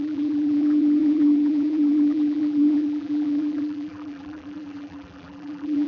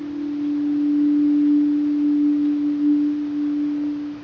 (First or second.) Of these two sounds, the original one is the second